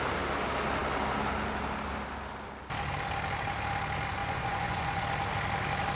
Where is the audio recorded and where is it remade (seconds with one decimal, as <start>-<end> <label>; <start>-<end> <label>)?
0.0-4.2 recorded; 4.2-5.0 remade; 5.0-6.0 recorded